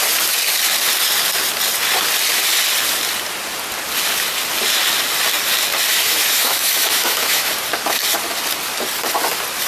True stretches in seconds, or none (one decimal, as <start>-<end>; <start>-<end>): 0.0-5.9; 7.5-9.7